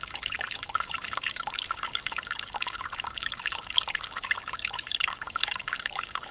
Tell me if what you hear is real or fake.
fake